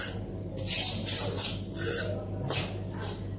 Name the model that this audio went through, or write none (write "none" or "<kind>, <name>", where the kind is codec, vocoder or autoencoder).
none